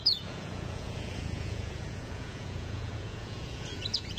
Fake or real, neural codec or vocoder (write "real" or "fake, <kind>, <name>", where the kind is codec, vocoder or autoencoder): fake, vocoder, Vocos